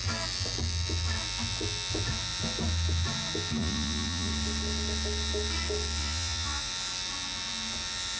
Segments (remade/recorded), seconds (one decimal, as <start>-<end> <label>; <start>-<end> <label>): 0.0-3.6 recorded; 3.6-4.3 remade; 4.3-6.0 recorded; 6.0-6.7 remade; 6.7-8.2 recorded